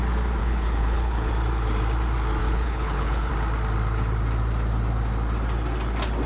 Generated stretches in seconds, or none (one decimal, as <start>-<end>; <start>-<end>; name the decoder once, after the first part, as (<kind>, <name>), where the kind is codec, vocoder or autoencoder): 0.4-1.3 (codec, HILCodec); 2.4-3.3